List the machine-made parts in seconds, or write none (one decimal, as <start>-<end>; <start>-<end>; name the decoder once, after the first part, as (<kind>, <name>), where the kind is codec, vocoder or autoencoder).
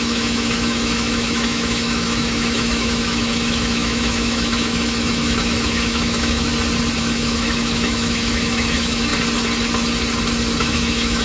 0.0-6.5 (autoencoder, DAC-VAE); 7.0-9.1; 10.6-11.2